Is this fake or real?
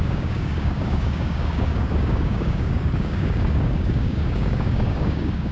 fake